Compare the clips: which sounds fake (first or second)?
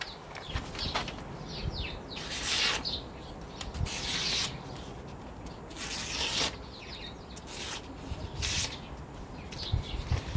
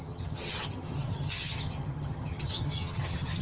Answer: second